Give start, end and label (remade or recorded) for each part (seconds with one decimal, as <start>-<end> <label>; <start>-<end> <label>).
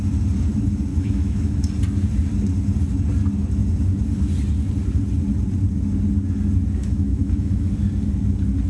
0.0-0.9 recorded; 0.9-1.7 remade; 1.7-6.8 recorded; 6.8-7.7 remade; 7.7-8.7 recorded